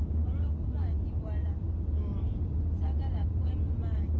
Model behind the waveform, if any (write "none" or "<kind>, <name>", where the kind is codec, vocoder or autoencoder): none